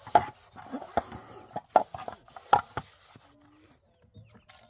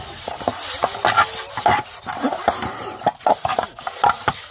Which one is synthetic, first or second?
second